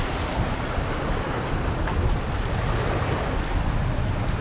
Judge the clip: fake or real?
real